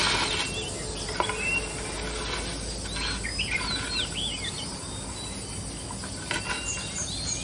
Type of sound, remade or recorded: recorded